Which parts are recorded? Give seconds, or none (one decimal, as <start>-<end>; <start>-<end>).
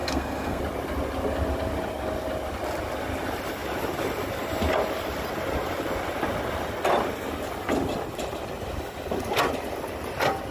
0.6-10.5